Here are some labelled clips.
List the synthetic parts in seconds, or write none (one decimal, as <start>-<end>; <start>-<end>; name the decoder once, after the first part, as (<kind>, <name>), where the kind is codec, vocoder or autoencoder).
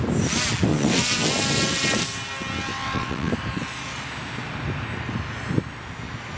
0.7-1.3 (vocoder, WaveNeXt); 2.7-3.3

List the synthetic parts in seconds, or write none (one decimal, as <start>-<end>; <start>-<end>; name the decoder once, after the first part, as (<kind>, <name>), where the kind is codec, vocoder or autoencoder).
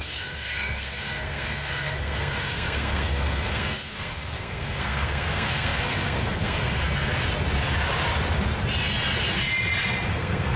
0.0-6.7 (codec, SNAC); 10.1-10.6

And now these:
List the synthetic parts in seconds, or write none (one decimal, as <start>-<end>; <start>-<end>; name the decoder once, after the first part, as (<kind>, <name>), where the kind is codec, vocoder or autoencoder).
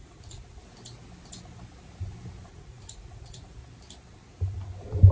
0.0-0.6 (vocoder, Vocos); 2.5-3.6